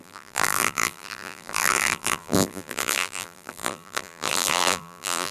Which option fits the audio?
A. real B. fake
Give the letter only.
B